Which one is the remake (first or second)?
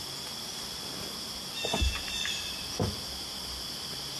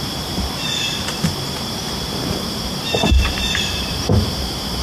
second